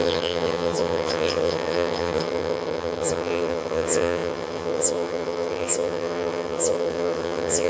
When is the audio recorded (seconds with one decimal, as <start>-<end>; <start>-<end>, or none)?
none

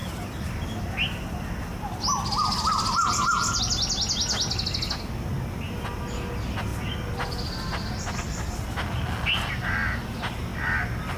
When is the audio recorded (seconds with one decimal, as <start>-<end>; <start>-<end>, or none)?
0.0-11.2

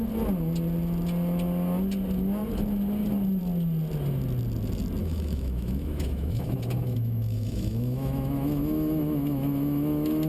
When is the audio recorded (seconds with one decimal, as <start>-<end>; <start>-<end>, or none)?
0.0-5.0

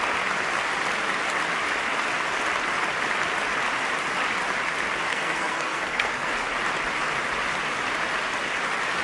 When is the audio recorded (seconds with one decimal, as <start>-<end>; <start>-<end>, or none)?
0.0-5.1; 6.3-9.0